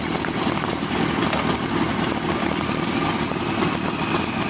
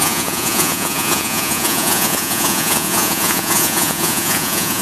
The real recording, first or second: first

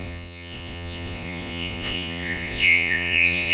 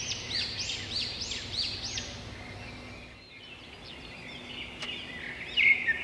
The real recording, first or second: second